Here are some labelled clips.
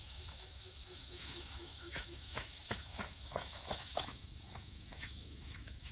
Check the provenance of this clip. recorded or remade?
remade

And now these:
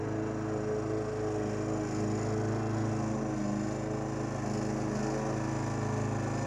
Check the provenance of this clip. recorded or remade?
recorded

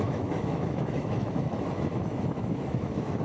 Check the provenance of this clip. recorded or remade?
remade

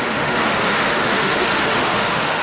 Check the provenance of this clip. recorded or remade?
remade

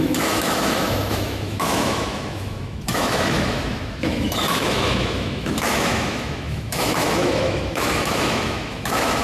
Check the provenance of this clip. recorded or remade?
remade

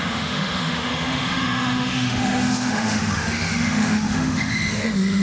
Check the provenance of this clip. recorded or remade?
remade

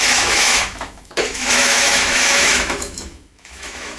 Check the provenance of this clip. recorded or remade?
remade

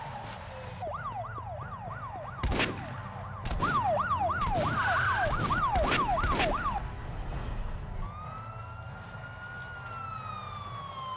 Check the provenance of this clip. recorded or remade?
recorded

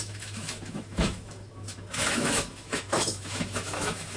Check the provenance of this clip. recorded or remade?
remade